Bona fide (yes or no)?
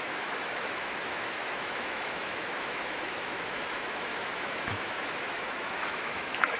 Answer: no